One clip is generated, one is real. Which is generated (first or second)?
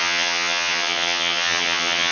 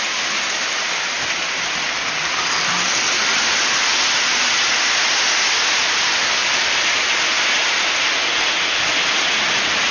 first